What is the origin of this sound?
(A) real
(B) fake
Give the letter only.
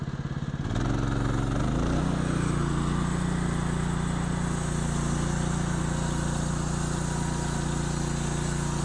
A